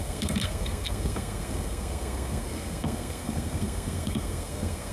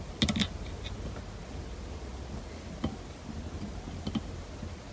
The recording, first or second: second